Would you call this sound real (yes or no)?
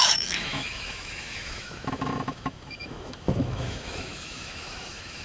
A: no